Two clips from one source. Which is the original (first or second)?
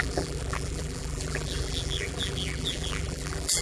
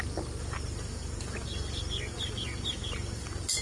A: second